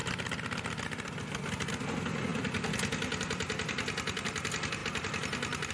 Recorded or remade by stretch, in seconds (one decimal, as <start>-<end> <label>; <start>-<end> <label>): 0.0-4.8 recorded; 4.8-5.7 remade